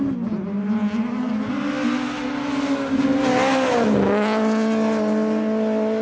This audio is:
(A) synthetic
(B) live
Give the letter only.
B